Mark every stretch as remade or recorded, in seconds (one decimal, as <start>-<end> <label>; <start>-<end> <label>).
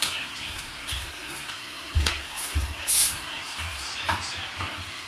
0.0-3.9 remade; 3.9-4.6 recorded; 4.6-5.1 remade